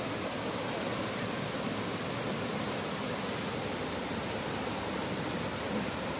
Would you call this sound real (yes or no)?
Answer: yes